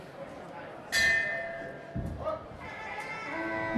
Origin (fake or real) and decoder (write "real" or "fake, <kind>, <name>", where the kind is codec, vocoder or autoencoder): real